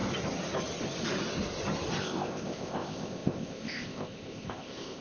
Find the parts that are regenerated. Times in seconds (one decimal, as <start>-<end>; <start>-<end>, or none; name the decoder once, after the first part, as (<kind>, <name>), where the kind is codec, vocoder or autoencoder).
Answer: 2.0-5.0 (codec, ZipCodec)